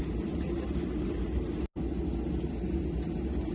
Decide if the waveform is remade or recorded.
recorded